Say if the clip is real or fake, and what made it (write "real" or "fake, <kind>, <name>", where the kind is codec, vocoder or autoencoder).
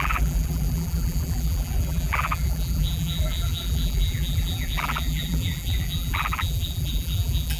fake, vocoder, BigVGAN v2